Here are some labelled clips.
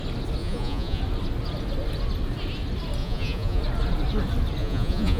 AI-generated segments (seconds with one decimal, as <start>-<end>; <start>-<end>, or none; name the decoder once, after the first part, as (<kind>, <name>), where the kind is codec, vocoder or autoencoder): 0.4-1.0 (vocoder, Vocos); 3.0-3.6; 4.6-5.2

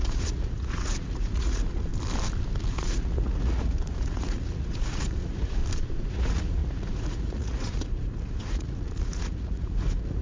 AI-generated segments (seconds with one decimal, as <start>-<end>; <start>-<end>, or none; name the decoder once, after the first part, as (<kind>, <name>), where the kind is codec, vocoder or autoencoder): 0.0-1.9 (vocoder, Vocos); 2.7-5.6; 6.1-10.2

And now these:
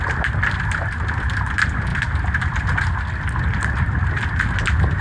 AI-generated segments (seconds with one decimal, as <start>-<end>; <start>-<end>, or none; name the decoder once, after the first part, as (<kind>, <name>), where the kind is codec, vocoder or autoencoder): none

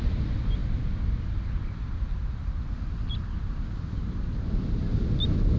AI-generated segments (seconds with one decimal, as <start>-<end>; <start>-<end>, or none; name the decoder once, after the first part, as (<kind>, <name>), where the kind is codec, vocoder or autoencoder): none